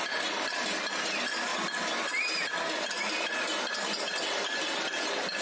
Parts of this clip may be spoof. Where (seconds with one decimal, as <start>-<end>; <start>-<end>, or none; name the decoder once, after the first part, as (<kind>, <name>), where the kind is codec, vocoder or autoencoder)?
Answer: none